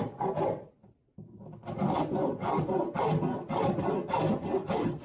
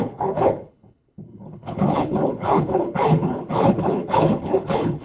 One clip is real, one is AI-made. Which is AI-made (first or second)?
second